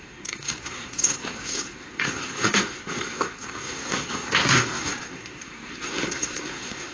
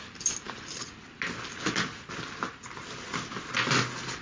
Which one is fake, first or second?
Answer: first